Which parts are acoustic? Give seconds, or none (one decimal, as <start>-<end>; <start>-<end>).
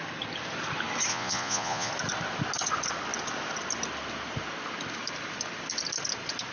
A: 0.0-1.1; 1.9-6.5